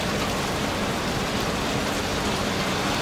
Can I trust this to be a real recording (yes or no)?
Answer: yes